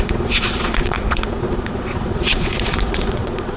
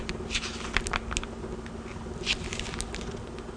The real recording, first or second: second